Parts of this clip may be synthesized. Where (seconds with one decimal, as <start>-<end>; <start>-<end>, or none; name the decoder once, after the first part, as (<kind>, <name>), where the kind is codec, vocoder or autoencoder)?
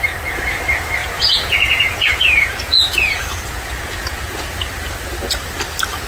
1.0-4.7 (vocoder, Vocos)